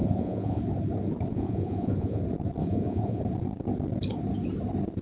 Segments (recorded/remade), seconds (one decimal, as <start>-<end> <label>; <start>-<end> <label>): 0.0-0.6 remade; 0.6-1.3 recorded; 1.3-2.2 remade; 2.2-2.6 recorded; 2.6-3.2 remade; 3.2-5.0 recorded